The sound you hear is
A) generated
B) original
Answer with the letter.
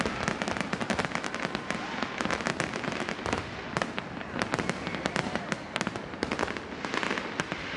B